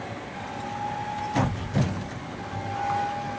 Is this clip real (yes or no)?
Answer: yes